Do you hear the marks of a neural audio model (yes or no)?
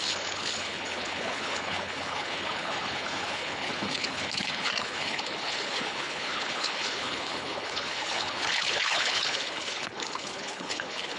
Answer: yes